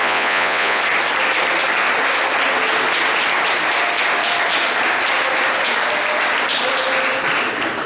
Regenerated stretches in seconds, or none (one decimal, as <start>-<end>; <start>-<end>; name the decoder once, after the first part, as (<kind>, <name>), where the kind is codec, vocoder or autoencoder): 0.0-0.8 (vocoder, Vocos)